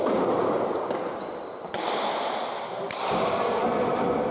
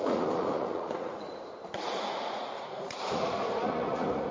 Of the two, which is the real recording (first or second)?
first